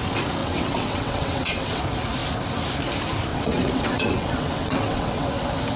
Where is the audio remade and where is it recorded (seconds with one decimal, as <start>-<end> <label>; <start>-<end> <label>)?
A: 0.0-0.4 recorded; 0.4-1.8 remade; 1.8-3.3 recorded; 3.3-5.3 remade; 5.3-5.8 recorded